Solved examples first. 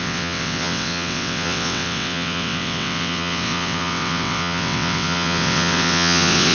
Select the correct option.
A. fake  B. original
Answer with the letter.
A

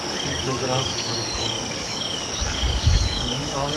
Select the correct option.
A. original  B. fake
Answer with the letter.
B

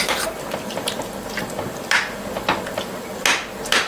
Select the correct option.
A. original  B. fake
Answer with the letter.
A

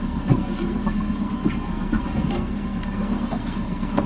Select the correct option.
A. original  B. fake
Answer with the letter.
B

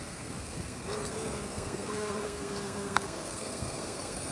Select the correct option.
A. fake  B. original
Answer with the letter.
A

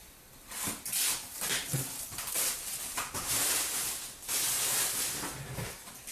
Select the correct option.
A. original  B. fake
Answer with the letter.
A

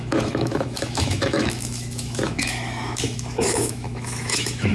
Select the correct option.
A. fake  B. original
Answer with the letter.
A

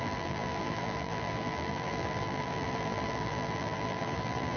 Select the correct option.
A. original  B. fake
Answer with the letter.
B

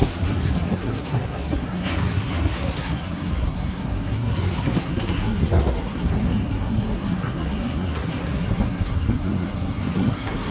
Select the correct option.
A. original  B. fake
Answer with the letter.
B